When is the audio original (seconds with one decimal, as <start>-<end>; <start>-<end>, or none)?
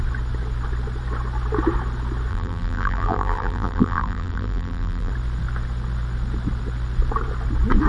0.0-2.3; 5.1-7.9